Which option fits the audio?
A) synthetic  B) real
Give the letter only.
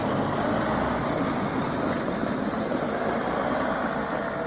B